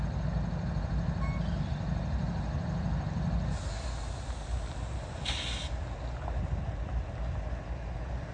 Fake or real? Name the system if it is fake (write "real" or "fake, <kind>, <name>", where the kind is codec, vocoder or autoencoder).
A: real